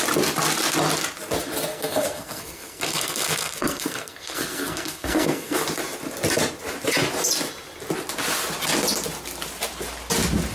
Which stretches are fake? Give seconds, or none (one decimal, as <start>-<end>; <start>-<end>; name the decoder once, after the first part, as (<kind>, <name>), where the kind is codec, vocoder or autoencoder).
1.7-5.6 (codec, SNAC)